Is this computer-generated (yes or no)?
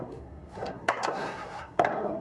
yes